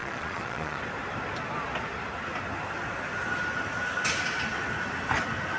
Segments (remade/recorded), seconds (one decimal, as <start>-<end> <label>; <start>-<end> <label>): 0.0-0.8 remade; 0.8-5.6 recorded